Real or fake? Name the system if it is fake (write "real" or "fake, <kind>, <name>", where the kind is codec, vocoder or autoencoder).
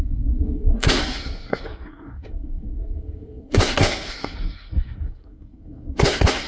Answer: fake, codec, SNAC